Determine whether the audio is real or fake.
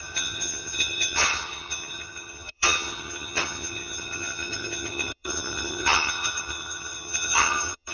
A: fake